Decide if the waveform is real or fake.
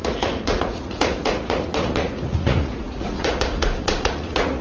fake